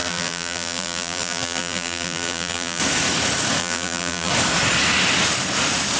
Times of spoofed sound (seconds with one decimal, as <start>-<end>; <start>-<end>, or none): 0.0-2.8; 3.6-4.3